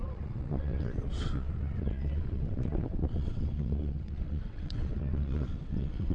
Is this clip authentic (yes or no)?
no